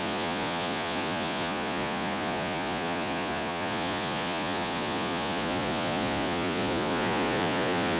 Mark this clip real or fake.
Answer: fake